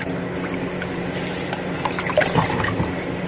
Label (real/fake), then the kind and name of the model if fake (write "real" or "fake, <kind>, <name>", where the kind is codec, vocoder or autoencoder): real